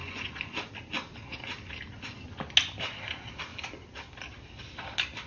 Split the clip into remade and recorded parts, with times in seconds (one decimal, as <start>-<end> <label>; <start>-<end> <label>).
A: 0.0-0.7 remade; 0.7-5.3 recorded